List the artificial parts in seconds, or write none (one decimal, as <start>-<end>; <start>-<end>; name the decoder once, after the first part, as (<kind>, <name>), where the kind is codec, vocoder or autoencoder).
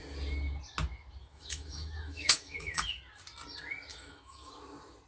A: 1.2-3.0 (autoencoder, DAC-VAE); 3.9-4.5